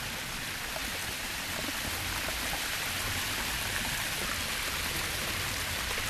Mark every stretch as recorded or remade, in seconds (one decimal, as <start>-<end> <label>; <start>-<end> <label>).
0.0-6.1 recorded